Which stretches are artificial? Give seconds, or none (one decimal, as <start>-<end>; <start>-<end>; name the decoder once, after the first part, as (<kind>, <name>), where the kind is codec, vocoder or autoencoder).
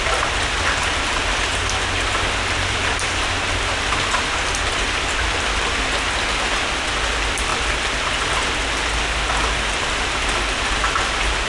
none